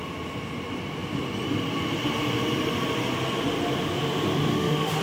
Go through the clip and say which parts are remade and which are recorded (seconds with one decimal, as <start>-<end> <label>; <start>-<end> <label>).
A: 0.0-4.5 recorded; 4.5-5.0 remade